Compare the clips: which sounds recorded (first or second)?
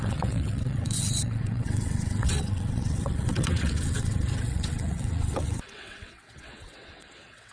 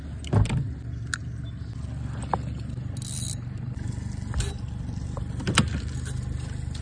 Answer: second